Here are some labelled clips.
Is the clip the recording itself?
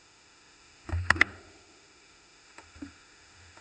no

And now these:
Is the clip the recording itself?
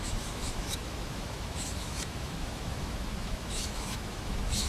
no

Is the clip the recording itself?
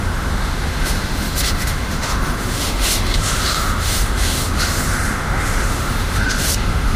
no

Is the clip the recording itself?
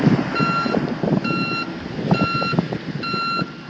yes